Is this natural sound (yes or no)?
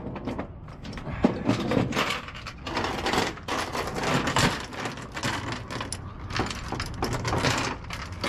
yes